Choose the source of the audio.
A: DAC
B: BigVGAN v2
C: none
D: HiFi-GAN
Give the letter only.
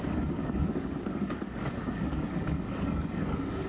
A